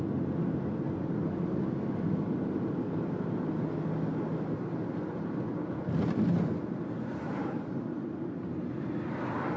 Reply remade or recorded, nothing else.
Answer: recorded